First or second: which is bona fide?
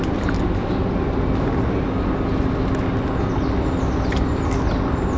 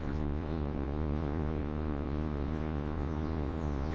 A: first